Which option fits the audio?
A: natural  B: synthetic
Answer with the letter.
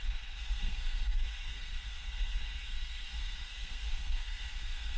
B